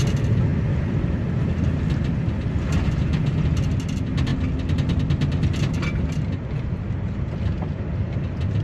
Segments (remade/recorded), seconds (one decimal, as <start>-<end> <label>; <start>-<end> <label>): 0.0-8.6 recorded